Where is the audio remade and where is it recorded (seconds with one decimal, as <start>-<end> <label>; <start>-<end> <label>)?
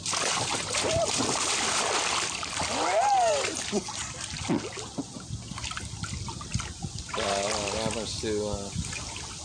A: 0.0-9.4 recorded